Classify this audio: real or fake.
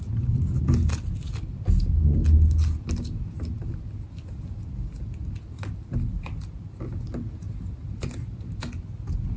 real